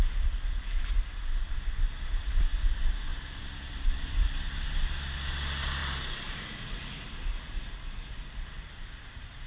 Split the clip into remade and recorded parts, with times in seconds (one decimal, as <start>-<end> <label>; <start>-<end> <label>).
0.0-3.1 recorded; 3.1-4.7 remade; 4.7-5.8 recorded; 5.8-9.5 remade